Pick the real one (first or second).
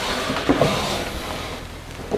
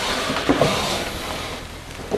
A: first